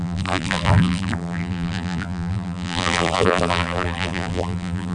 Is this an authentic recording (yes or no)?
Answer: no